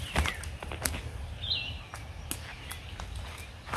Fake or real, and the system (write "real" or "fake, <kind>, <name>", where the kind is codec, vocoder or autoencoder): real